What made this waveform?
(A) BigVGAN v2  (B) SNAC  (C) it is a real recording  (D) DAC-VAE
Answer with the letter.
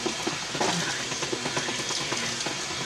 C